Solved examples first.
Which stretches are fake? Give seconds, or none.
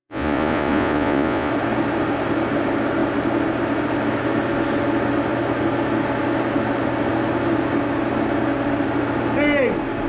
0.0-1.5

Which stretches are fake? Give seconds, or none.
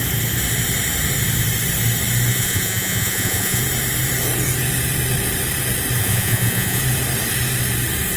2.3-3.6; 6.0-6.8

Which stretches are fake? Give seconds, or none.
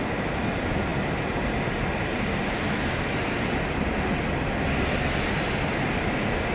none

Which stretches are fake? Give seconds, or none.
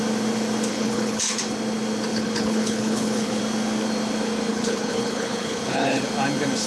0.7-1.4; 2.1-3.4; 4.5-6.0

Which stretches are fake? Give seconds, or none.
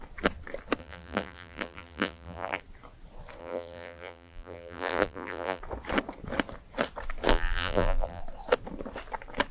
0.8-2.6; 3.4-5.6; 7.3-8.2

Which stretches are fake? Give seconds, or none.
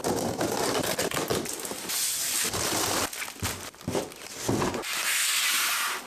none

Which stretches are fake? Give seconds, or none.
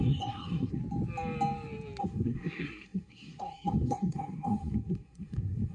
0.0-0.8; 2.0-5.7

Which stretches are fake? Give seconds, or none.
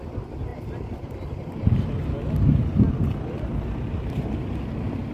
none